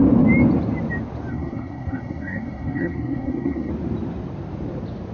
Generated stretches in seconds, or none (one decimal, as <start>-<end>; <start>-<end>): 1.3-3.7